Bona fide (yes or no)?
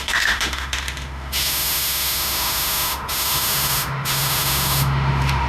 no